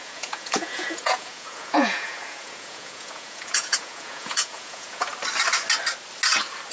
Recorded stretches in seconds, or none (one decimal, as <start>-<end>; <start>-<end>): 5.1-6.7